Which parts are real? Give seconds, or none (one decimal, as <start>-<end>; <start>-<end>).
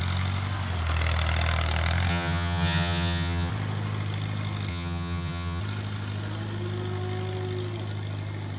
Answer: 0.0-2.1; 3.5-4.7; 5.6-8.6